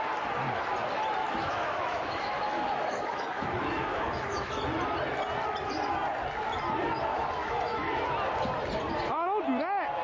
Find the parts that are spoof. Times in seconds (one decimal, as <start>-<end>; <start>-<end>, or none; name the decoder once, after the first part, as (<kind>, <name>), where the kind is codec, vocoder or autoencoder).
1.2-4.5 (autoencoder, DAC-VAE); 7.1-8.0